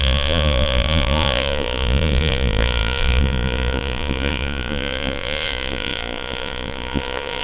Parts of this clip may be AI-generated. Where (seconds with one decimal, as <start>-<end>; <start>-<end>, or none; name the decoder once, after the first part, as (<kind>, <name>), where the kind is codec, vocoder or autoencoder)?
0.0-7.4 (vocoder, Vocos)